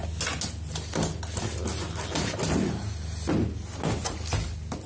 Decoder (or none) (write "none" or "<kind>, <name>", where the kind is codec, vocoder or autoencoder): none